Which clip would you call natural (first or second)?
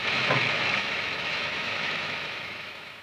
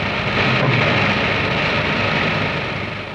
second